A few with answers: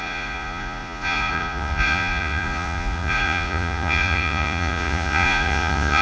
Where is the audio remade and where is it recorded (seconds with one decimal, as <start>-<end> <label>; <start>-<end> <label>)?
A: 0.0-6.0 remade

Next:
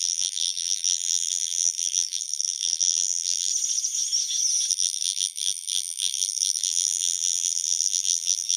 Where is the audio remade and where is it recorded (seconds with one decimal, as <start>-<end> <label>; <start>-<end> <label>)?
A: 0.0-3.5 remade; 3.5-4.7 recorded; 4.7-8.6 remade

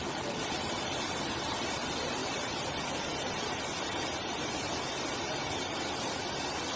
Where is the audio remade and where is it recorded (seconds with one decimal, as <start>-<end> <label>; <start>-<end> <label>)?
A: 0.0-6.8 recorded

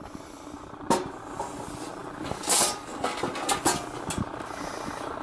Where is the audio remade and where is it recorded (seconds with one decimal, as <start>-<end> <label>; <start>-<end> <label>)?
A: 0.0-5.2 recorded